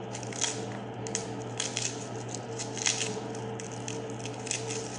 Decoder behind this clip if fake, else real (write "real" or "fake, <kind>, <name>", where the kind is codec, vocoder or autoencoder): real